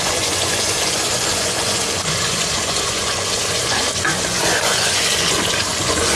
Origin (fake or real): fake